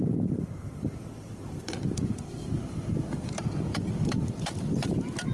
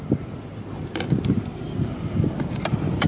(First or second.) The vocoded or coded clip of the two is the first